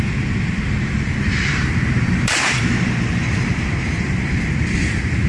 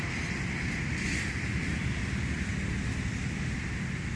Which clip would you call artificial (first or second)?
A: first